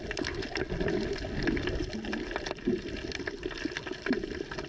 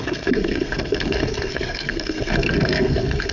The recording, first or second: first